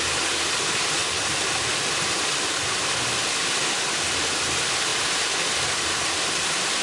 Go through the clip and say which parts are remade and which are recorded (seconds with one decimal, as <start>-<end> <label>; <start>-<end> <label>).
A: 0.0-6.8 recorded

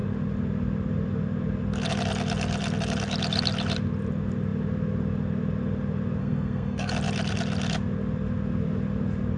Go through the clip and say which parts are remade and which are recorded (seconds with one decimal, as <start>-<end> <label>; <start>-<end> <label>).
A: 0.0-6.2 recorded; 6.2-6.9 remade; 6.9-9.4 recorded

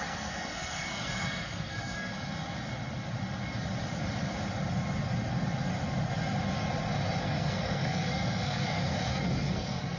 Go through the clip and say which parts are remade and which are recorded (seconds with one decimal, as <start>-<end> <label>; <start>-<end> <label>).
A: 0.0-2.1 remade; 2.1-7.2 recorded; 7.2-10.0 remade

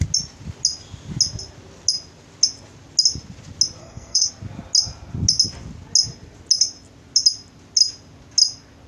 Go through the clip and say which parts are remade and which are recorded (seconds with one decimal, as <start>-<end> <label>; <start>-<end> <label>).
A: 0.0-3.8 recorded; 3.8-4.3 remade; 4.3-8.9 recorded

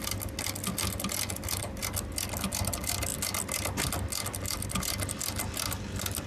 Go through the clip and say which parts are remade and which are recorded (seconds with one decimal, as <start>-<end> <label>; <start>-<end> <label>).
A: 0.0-6.3 recorded